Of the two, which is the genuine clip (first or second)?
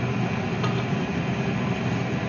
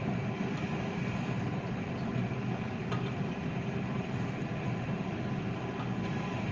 first